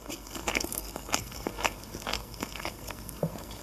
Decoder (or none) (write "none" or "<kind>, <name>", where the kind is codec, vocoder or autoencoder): codec, SNAC